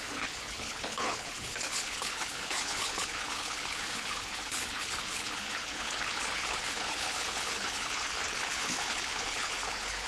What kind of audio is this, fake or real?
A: fake